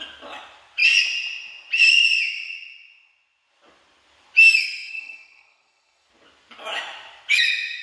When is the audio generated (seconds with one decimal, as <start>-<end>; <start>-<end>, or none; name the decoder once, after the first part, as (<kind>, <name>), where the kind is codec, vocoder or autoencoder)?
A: 4.6-6.1 (codec, SNAC)